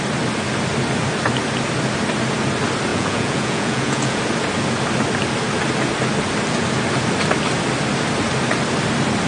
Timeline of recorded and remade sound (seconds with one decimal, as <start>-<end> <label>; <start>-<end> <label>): 0.0-2.9 recorded; 2.9-4.2 remade; 4.2-9.3 recorded